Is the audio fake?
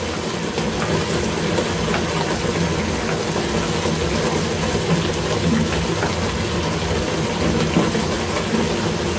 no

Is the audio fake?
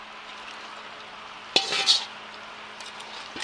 no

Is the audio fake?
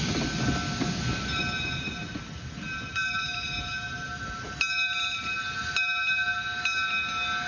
no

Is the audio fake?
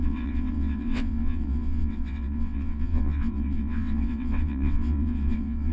yes